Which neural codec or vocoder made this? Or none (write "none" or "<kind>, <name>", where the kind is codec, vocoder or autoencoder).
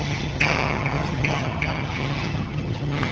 vocoder, HiFi-GAN